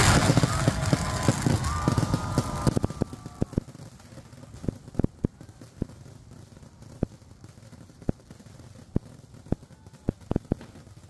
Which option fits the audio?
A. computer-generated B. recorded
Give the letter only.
B